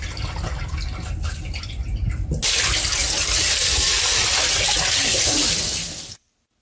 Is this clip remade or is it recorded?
recorded